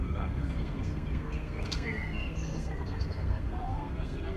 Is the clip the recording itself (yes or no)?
no